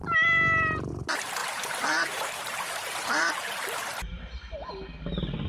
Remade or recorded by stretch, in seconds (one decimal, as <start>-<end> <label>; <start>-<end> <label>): 0.0-1.4 recorded; 1.4-4.7 remade; 4.7-5.5 recorded